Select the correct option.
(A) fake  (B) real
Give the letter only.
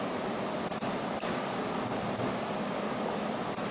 B